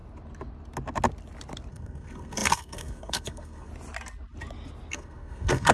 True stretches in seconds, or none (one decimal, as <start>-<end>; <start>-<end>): 0.0-1.7; 3.7-4.9